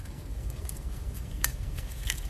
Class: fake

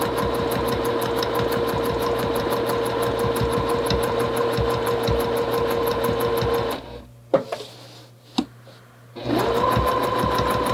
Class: real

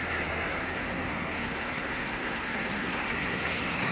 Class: fake